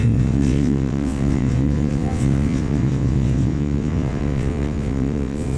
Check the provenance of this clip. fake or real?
fake